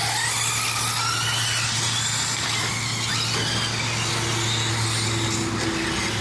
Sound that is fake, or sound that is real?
real